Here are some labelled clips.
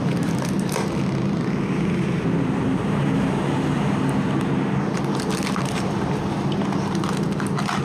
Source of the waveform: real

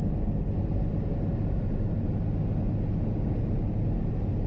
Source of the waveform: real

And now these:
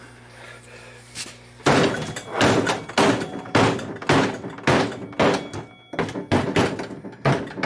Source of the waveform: real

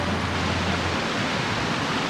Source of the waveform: real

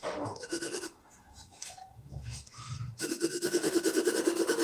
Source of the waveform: fake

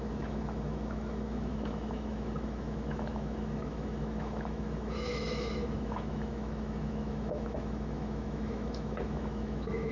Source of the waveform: fake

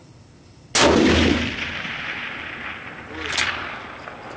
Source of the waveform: real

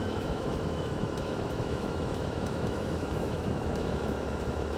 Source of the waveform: fake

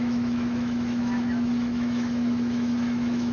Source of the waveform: fake